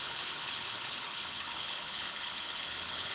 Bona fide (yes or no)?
no